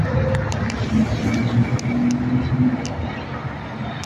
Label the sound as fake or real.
real